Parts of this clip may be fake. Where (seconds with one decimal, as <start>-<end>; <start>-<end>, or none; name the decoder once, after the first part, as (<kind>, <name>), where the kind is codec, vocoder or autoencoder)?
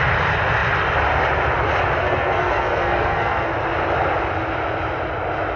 2.0-3.5 (codec, SNAC)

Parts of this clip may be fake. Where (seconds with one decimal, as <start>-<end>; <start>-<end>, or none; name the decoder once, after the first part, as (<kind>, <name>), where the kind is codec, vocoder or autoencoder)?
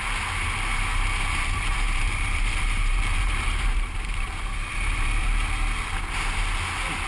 0.9-5.2 (vocoder, BigVGAN v2)